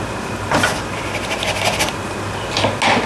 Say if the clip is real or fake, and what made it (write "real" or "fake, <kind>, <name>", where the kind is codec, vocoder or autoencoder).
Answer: real